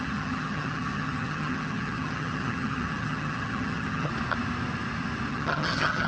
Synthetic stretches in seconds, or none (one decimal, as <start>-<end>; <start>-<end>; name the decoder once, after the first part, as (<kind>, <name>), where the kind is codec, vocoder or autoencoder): 0.0-4.1 (vocoder, HiFi-GAN); 5.3-6.1